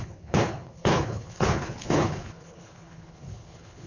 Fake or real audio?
fake